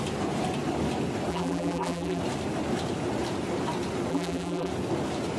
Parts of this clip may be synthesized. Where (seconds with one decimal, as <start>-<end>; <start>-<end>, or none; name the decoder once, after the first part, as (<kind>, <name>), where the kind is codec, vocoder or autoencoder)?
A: 1.3-2.2 (vocoder, BigVGAN v2); 4.1-4.7